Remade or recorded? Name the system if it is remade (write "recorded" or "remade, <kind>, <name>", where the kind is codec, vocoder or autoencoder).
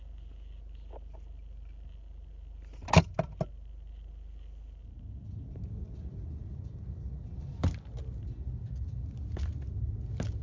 recorded